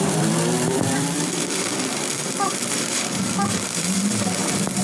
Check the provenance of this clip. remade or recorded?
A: remade